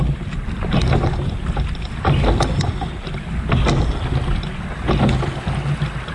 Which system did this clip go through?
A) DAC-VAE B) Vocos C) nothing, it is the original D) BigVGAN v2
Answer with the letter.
C